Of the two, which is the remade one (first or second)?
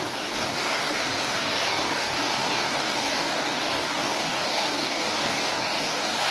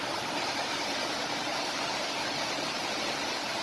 first